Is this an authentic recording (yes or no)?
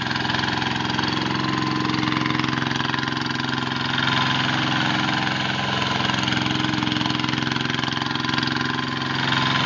yes